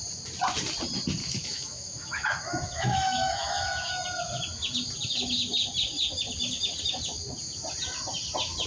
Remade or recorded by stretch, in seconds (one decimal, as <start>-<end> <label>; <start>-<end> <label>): 0.0-1.2 recorded; 1.2-4.2 remade; 4.2-8.7 recorded